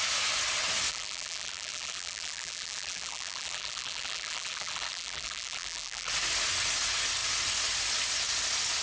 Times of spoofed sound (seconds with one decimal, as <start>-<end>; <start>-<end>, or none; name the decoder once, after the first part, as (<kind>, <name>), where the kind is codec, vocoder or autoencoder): 0.9-6.1 (vocoder, BigVGAN v2)